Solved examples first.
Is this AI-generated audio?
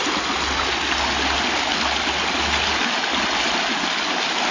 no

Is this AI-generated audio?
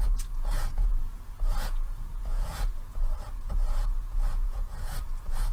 yes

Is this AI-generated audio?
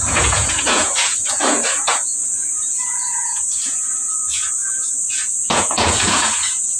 yes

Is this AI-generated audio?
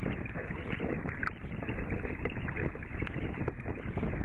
no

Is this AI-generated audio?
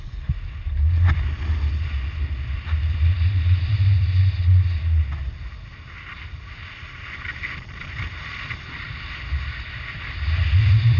no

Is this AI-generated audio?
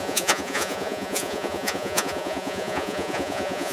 yes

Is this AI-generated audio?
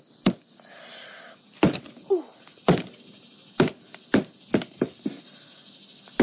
no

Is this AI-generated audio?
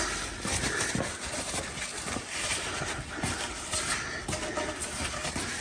no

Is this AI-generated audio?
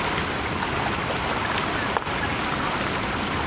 no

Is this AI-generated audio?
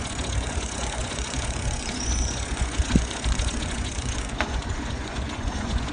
yes